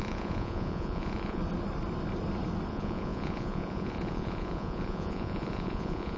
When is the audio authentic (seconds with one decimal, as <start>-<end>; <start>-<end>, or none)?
1.4-2.7